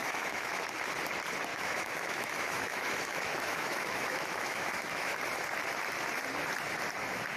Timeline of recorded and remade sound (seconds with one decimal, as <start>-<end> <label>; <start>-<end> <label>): 0.0-0.6 remade; 0.6-1.5 recorded; 1.5-5.2 remade; 5.2-7.4 recorded